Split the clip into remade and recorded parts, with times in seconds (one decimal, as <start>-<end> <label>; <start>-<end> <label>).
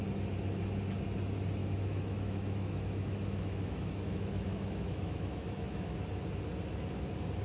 0.0-1.6 recorded; 1.6-6.0 remade; 6.0-7.4 recorded